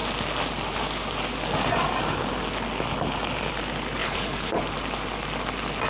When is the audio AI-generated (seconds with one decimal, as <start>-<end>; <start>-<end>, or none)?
4.0-4.6